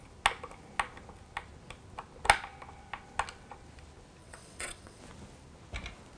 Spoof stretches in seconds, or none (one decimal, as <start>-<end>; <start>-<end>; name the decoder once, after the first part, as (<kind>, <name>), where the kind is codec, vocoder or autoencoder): 4.2-5.0 (vocoder, WaveNeXt)